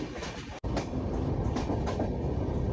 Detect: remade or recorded recorded